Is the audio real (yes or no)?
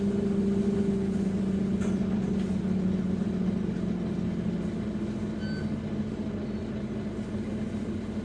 yes